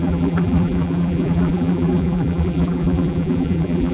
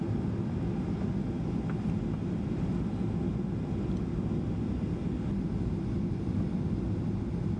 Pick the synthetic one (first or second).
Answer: first